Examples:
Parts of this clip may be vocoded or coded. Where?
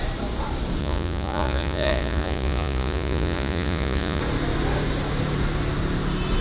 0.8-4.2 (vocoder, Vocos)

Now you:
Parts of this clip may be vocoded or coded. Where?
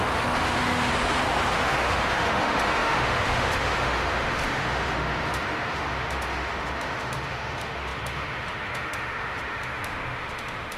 0.0-0.9 (autoencoder, DAC-VAE); 1.5-10.8